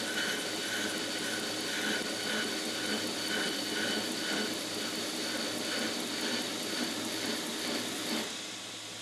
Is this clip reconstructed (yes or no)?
no